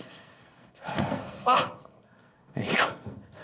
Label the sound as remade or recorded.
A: remade